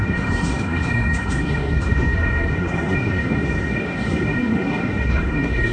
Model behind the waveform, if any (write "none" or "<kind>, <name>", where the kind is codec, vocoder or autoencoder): codec, SNAC